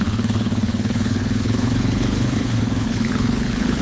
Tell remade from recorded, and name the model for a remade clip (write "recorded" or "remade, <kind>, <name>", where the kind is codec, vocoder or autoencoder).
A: remade, codec, HILCodec